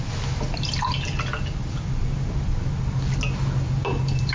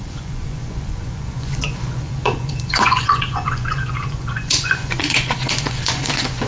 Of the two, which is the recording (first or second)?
first